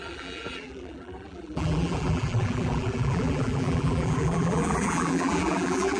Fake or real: fake